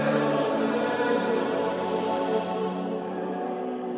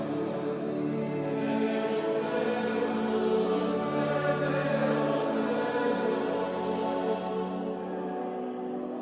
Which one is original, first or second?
second